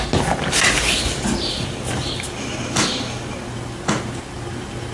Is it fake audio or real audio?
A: real